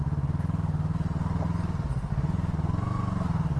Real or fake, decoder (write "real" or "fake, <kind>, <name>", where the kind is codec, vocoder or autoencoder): real